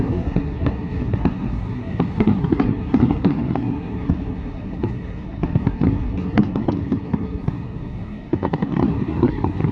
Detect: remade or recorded remade